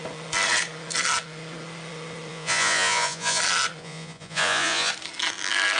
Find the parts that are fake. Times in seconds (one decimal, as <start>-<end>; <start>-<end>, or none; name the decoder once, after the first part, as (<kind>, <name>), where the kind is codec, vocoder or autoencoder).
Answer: 2.3-3.4 (vocoder, Vocos); 3.8-4.9

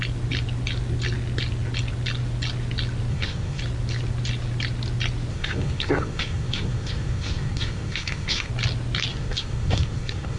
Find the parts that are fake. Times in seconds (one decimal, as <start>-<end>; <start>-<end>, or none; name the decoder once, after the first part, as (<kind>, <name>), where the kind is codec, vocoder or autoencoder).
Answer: 3.1-3.6 (codec, SNAC); 5.3-8.5; 9.1-10.4